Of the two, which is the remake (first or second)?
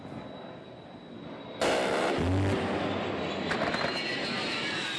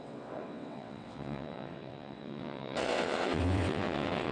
second